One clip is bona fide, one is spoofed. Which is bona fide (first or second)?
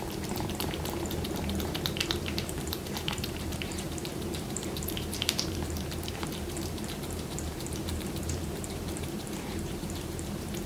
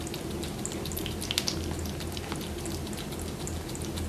second